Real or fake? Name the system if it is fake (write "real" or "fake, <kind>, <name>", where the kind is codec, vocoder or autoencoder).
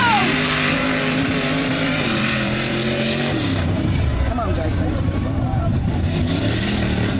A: fake, vocoder, BigVGAN v2